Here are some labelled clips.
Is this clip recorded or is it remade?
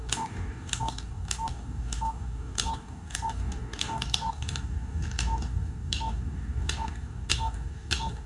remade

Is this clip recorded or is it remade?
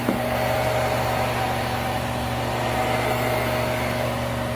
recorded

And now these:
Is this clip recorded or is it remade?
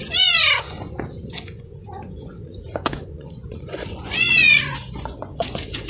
remade